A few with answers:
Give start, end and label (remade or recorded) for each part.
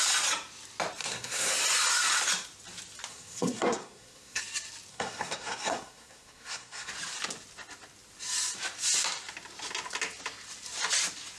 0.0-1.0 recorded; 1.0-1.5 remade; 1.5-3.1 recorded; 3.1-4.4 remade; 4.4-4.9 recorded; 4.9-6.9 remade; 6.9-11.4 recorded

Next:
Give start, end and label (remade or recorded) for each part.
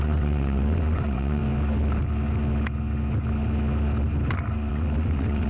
0.0-1.4 remade; 1.4-4.7 recorded; 4.7-5.5 remade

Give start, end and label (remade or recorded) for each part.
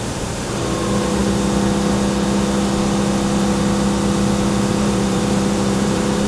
0.0-1.2 remade; 1.2-4.7 recorded; 4.7-6.3 remade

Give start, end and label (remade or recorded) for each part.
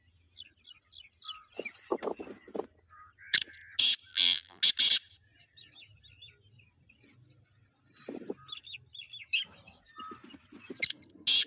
0.0-4.1 recorded; 4.1-4.6 remade; 4.6-11.5 recorded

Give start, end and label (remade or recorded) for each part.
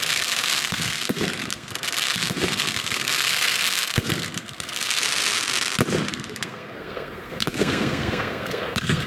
0.0-5.0 remade; 5.0-6.1 recorded; 6.1-9.1 remade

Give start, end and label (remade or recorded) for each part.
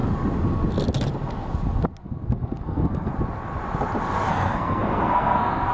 0.0-2.0 recorded; 2.0-3.1 remade; 3.1-4.3 recorded; 4.3-5.7 remade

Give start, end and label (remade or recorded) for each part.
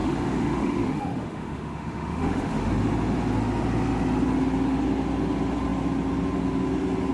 0.0-2.7 remade; 2.7-7.1 recorded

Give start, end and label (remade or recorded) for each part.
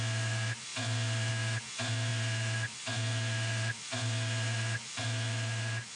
0.0-6.0 recorded